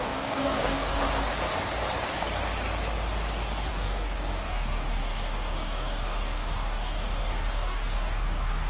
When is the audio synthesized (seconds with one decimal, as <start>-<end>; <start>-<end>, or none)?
0.0-1.0; 3.7-8.7